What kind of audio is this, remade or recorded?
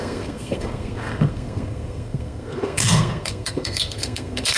remade